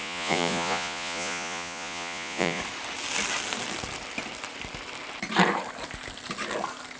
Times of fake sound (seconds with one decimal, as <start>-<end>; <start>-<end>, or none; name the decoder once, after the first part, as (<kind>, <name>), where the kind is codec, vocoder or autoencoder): 0.0-2.6 (vocoder, Vocos)